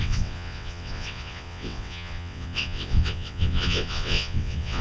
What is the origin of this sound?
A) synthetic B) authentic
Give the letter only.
A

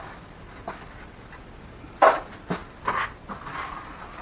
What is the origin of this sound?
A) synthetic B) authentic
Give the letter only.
B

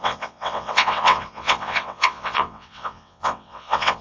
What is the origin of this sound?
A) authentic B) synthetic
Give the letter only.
B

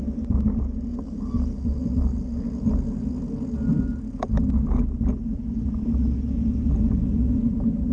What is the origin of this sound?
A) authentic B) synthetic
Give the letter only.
A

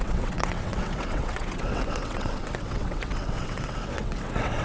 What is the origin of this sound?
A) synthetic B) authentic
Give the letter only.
A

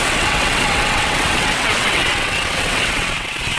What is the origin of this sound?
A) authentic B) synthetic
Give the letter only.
B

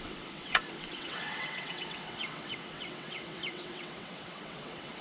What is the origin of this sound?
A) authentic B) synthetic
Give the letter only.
B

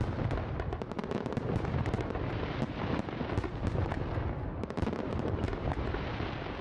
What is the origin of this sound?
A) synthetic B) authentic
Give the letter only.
B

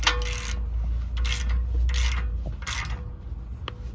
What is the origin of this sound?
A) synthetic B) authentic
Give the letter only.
B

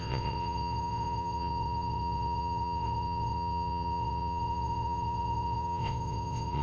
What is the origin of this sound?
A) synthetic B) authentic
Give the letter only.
A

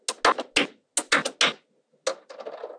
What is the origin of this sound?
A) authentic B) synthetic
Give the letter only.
A